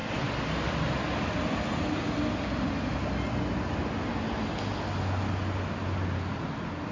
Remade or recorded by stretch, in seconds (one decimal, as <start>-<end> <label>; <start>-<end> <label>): 0.0-6.9 recorded